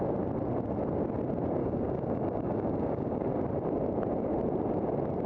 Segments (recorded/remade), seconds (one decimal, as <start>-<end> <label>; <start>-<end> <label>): 0.0-1.6 recorded; 1.6-3.2 remade; 3.2-5.3 recorded